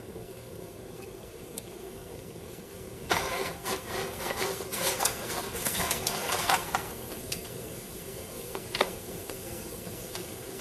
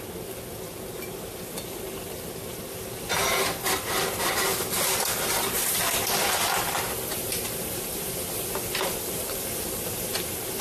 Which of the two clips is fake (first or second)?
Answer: first